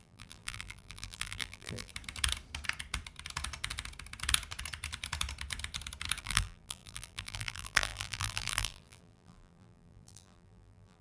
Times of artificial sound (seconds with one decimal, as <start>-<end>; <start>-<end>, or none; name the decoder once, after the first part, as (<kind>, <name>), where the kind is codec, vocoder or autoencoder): 0.0-1.9 (vocoder, BigVGAN v2); 6.2-11.0